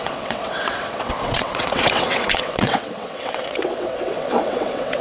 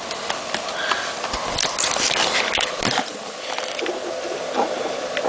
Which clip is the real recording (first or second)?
second